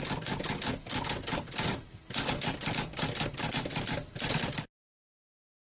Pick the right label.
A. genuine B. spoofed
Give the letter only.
A